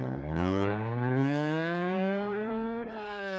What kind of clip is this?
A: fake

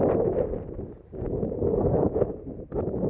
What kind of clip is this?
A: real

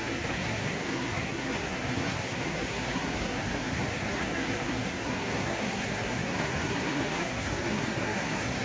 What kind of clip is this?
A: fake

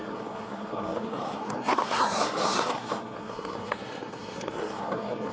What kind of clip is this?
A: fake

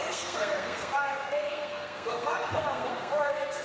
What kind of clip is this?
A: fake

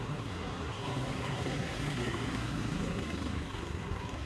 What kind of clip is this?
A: fake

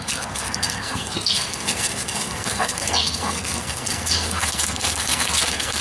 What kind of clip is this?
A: fake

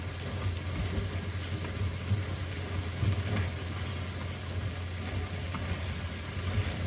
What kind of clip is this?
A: real